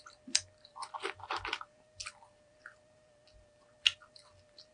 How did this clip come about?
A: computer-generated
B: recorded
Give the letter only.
B